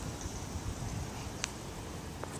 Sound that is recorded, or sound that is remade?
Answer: recorded